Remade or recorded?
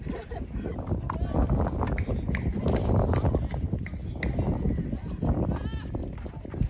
recorded